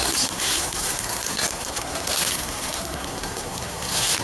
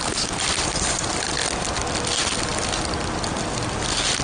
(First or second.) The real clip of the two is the second